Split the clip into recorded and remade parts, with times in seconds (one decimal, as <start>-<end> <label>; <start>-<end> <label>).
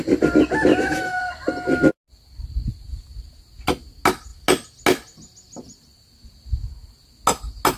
0.0-0.7 recorded; 0.7-1.2 remade; 1.2-7.8 recorded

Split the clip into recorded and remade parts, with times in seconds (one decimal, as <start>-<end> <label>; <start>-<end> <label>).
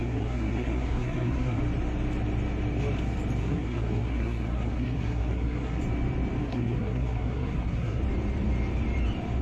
0.0-1.6 remade; 1.6-3.4 recorded; 3.4-5.8 remade; 5.8-6.4 recorded; 6.4-8.0 remade; 8.0-9.4 recorded